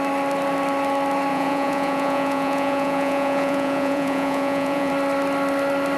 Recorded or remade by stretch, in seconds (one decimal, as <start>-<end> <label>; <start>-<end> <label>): 0.0-1.3 recorded; 1.3-4.9 remade; 4.9-6.0 recorded